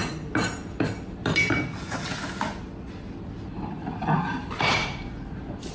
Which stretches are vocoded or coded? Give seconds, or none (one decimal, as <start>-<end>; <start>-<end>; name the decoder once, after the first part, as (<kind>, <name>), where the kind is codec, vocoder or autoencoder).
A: none